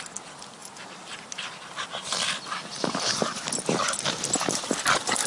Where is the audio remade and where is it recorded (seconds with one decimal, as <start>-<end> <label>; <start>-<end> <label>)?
0.0-5.3 recorded